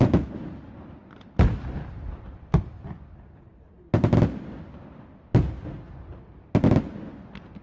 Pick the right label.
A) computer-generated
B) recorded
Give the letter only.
B